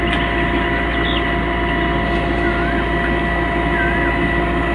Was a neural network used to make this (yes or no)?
no